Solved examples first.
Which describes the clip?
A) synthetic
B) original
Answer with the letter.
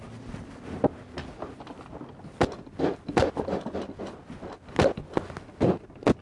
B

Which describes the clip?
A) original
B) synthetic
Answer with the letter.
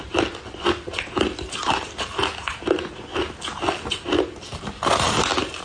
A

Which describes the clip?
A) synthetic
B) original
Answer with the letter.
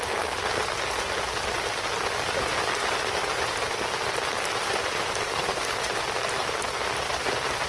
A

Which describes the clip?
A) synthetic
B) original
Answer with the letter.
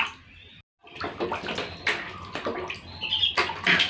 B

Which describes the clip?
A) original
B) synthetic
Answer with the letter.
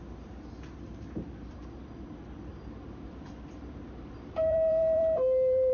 B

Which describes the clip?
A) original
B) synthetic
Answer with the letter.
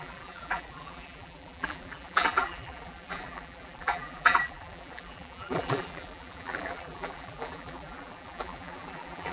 B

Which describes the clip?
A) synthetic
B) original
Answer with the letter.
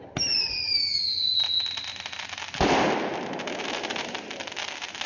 B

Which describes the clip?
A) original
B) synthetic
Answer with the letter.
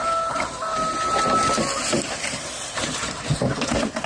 A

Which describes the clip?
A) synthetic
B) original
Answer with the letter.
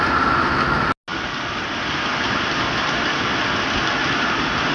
B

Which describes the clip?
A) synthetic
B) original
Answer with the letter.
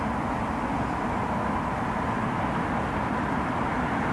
B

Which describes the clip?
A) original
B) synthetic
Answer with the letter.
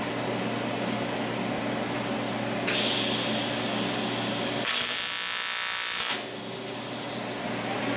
A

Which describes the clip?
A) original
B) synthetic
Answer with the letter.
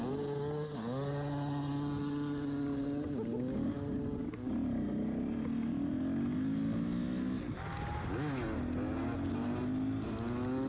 A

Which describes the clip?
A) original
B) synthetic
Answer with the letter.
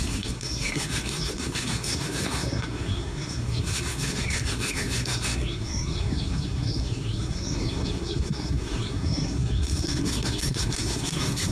B